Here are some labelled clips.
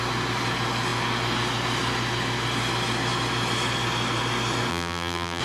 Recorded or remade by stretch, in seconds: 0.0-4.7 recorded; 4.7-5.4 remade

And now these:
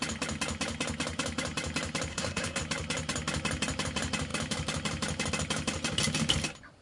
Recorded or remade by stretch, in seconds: 0.0-2.1 recorded; 2.1-2.6 remade; 2.6-6.8 recorded

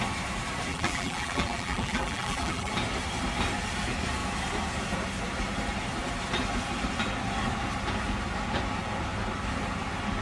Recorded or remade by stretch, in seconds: 0.0-0.7 recorded; 0.7-2.7 remade; 2.7-10.2 recorded

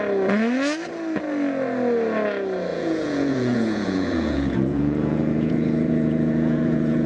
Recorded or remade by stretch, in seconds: 0.0-2.7 recorded; 2.7-7.1 remade

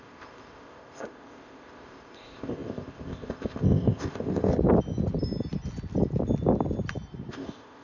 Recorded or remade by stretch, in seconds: 0.0-4.5 remade; 4.5-7.3 recorded; 7.3-7.8 remade

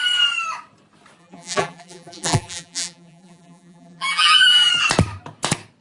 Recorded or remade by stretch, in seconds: 0.0-1.2 recorded; 1.2-4.7 remade; 4.7-5.8 recorded